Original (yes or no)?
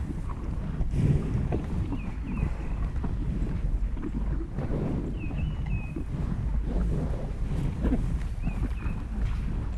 yes